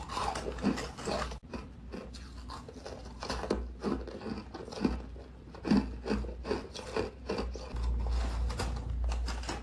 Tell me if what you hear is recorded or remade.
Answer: recorded